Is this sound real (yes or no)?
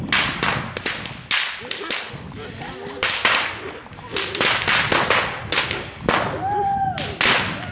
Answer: yes